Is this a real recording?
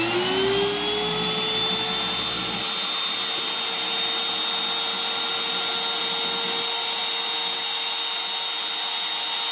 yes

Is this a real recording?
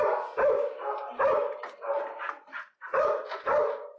yes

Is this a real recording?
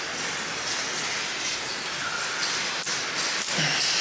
yes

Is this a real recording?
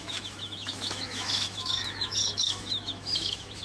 no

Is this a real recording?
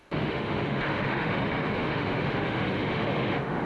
no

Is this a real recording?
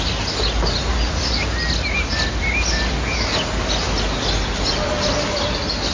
yes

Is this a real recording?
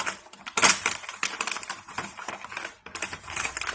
yes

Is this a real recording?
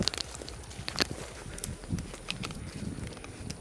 yes